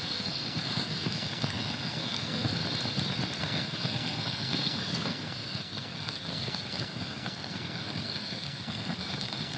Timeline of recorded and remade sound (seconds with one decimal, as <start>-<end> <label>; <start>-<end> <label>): 0.0-2.6 remade; 2.6-3.4 recorded; 3.4-9.6 remade